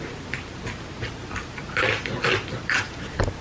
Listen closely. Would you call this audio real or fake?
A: real